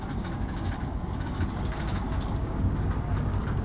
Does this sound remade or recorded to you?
remade